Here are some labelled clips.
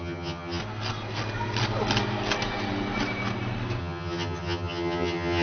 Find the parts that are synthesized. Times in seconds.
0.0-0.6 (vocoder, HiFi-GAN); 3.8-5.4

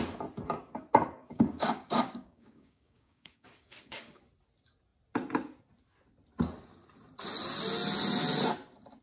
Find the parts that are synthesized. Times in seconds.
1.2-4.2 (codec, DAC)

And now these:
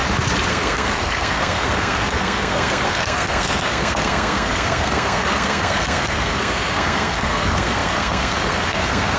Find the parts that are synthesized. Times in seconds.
0.5-9.2 (codec, SNAC)